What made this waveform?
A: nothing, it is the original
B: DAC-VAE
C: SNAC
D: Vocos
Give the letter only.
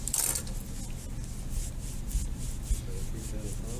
A